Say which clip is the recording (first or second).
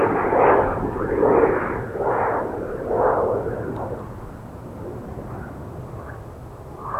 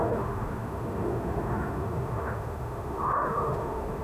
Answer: first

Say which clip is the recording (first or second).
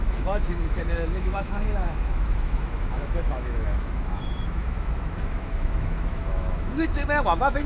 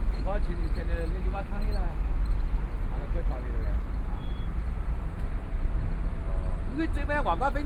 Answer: second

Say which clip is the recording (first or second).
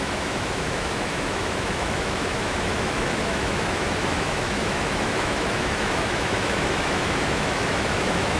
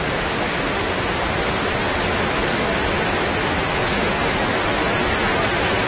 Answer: second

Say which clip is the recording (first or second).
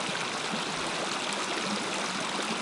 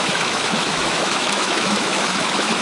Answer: first